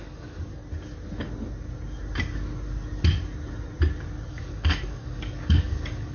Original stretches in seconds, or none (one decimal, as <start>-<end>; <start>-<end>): 0.6-4.3